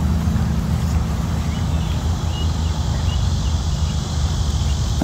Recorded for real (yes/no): yes